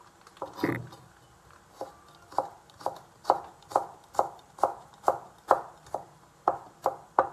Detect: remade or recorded recorded